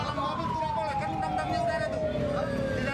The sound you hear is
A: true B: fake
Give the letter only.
A